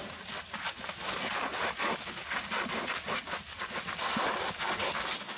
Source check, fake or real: real